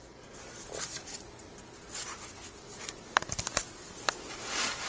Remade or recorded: recorded